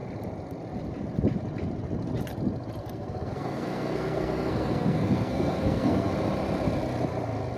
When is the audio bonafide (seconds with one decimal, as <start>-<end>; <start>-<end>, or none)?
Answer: 0.0-2.8; 6.1-7.6